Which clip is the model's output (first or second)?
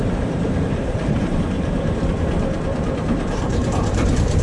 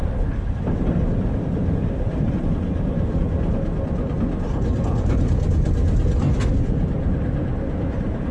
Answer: first